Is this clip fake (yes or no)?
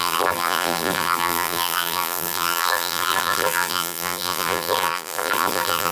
yes